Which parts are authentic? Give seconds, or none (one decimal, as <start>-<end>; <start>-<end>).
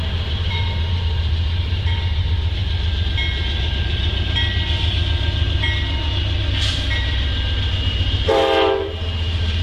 2.6-6.7